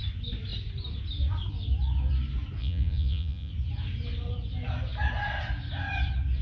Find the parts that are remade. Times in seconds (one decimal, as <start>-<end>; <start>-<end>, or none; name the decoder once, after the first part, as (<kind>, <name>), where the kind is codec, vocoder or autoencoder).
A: 2.6-3.5 (vocoder, Vocos)